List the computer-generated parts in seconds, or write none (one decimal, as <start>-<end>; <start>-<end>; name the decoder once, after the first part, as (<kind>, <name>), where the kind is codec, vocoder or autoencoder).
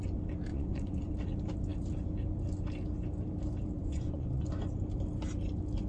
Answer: 0.5-1.1 (vocoder, Vocos); 3.8-4.5